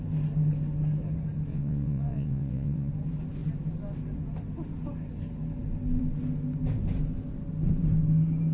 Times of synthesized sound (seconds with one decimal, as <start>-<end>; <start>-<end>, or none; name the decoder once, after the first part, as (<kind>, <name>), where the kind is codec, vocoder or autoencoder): 1.5-2.9 (vocoder, WaveNeXt)